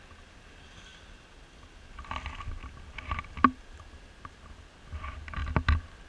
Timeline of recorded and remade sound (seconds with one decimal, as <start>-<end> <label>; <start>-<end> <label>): 0.0-6.1 recorded